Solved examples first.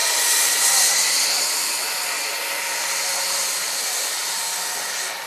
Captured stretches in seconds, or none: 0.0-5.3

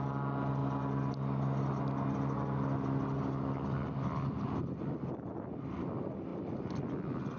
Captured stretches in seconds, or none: 0.0-7.4

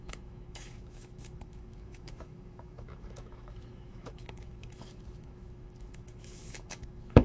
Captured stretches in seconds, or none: none